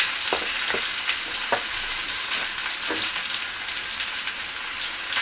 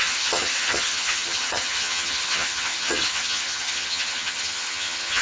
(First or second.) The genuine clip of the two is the first